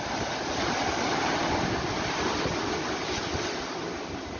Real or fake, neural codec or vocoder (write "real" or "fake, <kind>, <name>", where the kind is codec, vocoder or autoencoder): real